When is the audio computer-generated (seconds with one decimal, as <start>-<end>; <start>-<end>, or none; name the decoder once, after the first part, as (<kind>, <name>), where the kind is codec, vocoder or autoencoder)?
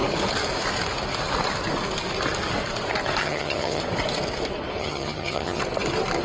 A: 3.2-3.8 (vocoder, HiFi-GAN); 4.8-5.6